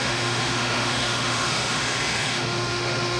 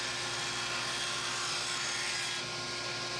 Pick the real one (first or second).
second